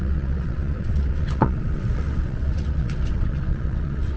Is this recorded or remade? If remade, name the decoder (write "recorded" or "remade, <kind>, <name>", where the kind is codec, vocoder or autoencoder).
remade, vocoder, WaveNeXt